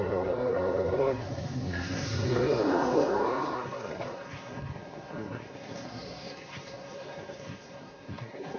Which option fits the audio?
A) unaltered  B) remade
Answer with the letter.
B